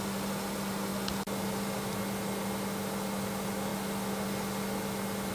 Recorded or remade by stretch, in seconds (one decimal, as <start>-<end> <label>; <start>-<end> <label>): 0.0-5.3 recorded